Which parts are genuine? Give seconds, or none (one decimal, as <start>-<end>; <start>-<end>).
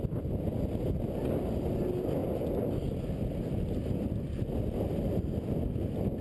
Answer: 0.0-6.2